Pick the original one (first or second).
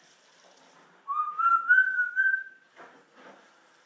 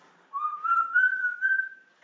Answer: first